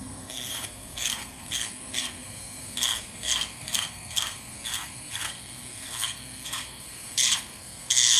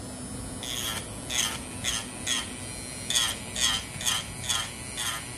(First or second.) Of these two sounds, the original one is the second